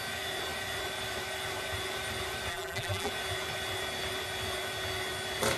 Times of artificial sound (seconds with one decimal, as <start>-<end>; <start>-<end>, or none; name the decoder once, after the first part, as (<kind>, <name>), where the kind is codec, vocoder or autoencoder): 2.5-3.1 (vocoder, BigVGAN v2)